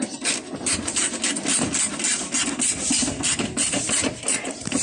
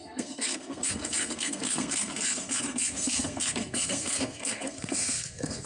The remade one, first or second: second